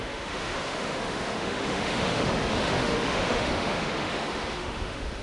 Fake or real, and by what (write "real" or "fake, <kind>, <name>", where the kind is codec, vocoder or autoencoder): fake, autoencoder, DAC-VAE